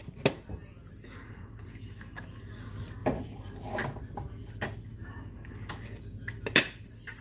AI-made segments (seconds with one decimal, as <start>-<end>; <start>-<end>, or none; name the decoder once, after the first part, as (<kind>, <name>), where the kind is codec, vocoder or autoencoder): 4.9-5.5 (autoencoder, DAC-VAE)